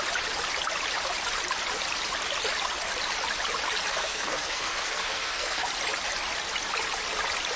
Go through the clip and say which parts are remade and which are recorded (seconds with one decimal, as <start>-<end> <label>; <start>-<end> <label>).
0.0-3.9 recorded; 3.9-5.7 remade; 5.7-7.6 recorded